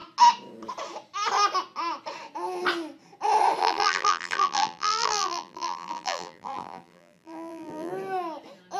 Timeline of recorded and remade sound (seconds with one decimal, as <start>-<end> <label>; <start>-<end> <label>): 0.0-3.6 recorded; 3.6-7.9 remade; 7.9-8.8 recorded